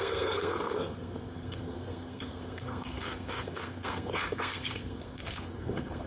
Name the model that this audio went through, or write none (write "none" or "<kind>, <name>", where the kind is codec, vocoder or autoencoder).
codec, SNAC